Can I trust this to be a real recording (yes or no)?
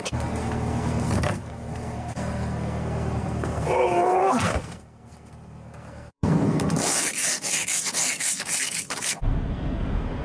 no